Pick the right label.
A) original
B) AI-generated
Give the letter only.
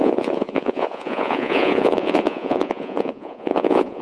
B